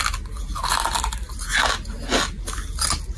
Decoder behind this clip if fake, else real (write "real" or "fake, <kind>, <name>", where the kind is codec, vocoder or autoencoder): real